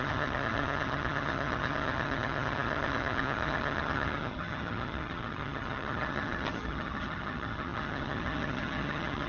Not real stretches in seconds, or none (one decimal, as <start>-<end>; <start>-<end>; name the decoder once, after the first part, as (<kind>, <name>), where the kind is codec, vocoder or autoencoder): 0.0-9.3 (vocoder, HiFi-GAN)